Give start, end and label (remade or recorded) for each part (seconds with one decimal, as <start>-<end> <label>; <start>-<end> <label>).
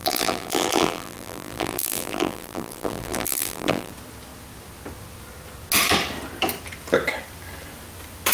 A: 0.0-3.9 remade; 3.9-8.3 recorded